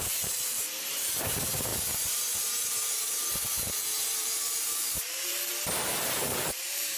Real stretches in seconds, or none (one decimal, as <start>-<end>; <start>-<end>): 0.7-1.2; 5.5-6.5